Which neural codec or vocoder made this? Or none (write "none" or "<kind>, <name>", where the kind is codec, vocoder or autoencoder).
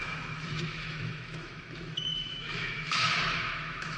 autoencoder, DAC-VAE